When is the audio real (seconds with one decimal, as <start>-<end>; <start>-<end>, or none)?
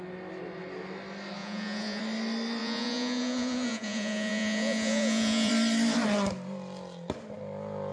0.0-1.4; 2.0-2.6; 5.5-7.9